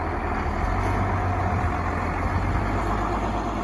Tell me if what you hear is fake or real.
real